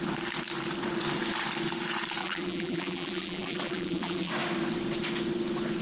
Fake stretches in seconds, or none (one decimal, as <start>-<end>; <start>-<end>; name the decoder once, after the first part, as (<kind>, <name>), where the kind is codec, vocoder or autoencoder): 2.2-4.3 (vocoder, BigVGAN v2)